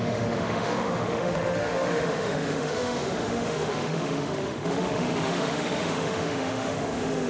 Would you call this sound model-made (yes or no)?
yes